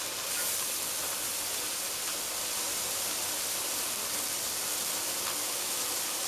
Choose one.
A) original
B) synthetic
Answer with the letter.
B